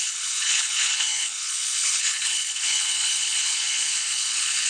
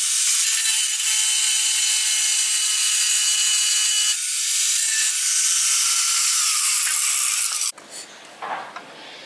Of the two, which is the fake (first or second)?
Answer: first